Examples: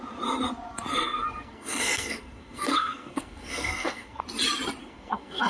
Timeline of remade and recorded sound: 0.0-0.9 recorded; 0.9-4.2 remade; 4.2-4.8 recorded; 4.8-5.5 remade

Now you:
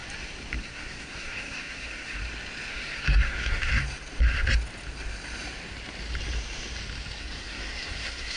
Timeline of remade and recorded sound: 0.0-0.6 recorded; 0.6-2.2 remade; 2.2-2.7 recorded; 2.7-3.7 remade; 3.7-7.2 recorded; 7.2-8.4 remade

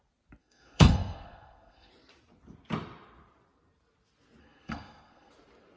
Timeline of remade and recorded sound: 0.0-0.4 recorded; 0.4-1.9 remade; 1.9-4.4 recorded; 4.4-5.3 remade; 5.3-5.8 recorded